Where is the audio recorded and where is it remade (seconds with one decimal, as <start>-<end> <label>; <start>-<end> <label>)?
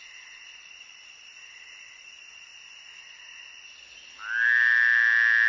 0.0-2.5 remade; 2.5-5.5 recorded